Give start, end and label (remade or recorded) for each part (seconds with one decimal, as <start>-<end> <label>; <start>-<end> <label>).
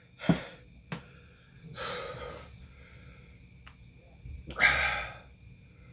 0.0-5.9 recorded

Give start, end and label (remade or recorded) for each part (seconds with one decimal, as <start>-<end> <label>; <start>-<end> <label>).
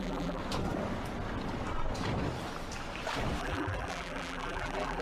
0.0-0.4 remade; 0.4-3.4 recorded; 3.4-5.0 remade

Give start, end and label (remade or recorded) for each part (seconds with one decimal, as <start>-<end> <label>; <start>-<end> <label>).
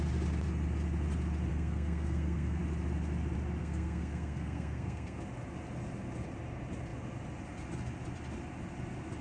0.0-1.5 recorded; 1.5-2.6 remade; 2.6-3.6 recorded; 3.6-5.2 remade; 5.2-9.2 recorded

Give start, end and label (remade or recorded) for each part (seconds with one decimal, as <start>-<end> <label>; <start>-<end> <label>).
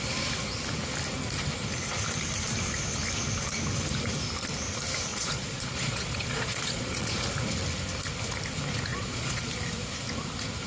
0.0-5.1 recorded; 5.1-7.1 remade; 7.1-8.9 recorded; 8.9-9.5 remade; 9.5-10.7 recorded